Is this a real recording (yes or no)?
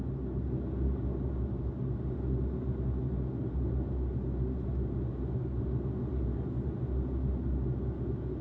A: yes